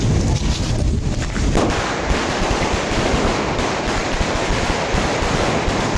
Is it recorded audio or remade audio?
recorded